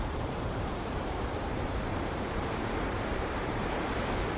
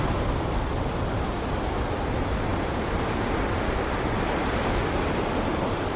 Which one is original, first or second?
second